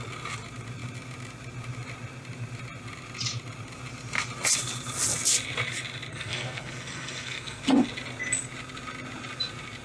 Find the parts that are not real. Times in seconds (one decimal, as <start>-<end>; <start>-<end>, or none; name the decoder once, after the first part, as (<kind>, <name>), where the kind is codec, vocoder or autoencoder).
6.1-7.6 (codec, SNAC)